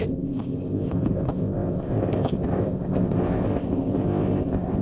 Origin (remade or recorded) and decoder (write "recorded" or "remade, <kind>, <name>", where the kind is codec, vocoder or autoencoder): remade, codec, ZipCodec